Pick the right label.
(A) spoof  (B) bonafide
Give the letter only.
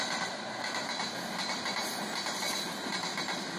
B